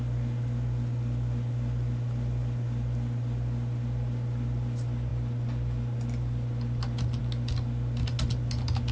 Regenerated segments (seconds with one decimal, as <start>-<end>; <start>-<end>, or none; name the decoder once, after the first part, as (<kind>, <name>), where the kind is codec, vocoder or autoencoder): none

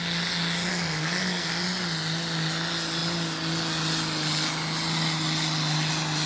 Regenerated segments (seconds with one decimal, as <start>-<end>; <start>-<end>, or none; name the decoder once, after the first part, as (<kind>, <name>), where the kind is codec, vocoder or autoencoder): 0.7-1.5 (codec, SNAC)

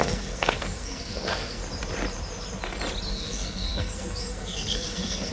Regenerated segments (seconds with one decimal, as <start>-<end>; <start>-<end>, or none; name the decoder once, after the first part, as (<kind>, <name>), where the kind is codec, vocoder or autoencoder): 0.0-1.6 (codec, SNAC); 3.1-5.3

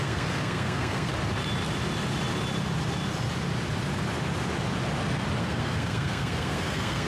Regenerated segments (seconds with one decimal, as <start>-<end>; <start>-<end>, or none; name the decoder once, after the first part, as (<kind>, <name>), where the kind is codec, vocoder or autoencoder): 0.0-1.1 (codec, SNAC); 5.4-7.1

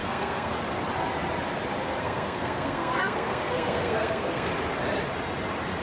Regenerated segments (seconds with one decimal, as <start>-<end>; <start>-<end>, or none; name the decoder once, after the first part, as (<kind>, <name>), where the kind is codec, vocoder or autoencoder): 0.0-0.5 (codec, SNAC); 2.0-4.5